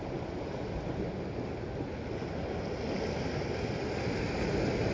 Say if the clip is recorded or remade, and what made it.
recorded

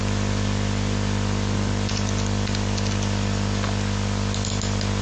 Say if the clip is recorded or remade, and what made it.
recorded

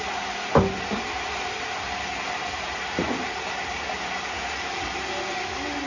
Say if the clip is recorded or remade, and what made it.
recorded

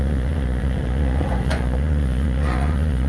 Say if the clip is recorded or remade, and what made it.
remade, vocoder, Vocos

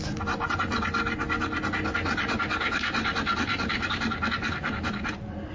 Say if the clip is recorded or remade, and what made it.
recorded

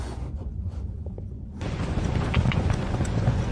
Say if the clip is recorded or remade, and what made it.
remade, vocoder, Vocos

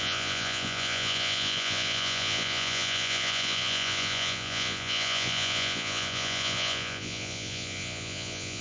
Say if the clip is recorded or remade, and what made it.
remade, vocoder, Vocos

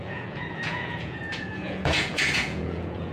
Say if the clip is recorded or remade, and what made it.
remade, vocoder, Vocos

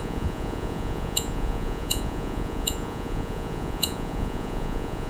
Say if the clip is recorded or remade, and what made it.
remade, vocoder, Vocos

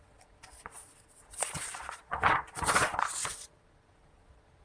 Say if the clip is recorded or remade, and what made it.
remade, vocoder, Vocos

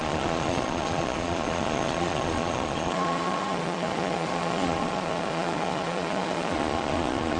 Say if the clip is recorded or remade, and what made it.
remade, vocoder, Vocos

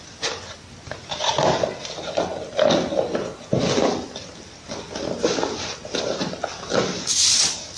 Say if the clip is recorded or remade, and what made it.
recorded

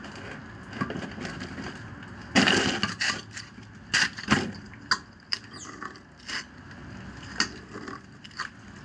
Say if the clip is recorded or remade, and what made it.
recorded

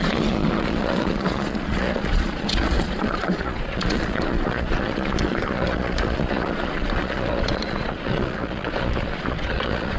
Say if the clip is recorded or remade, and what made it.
remade, vocoder, Vocos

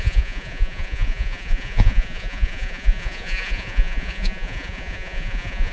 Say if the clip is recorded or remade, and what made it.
remade, vocoder, Vocos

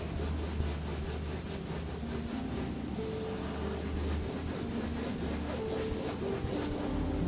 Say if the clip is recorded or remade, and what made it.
recorded